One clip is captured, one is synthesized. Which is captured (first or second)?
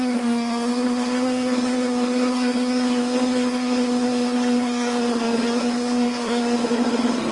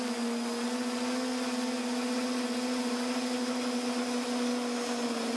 second